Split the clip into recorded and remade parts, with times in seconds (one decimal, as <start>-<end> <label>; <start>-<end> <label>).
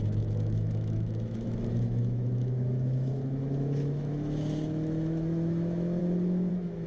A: 0.0-6.9 remade